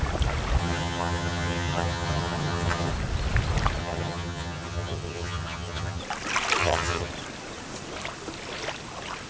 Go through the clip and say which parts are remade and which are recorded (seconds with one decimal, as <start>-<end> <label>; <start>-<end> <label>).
0.0-0.6 recorded; 0.6-2.9 remade; 2.9-3.8 recorded; 3.8-6.0 remade; 6.0-6.6 recorded; 6.6-7.1 remade; 7.1-9.3 recorded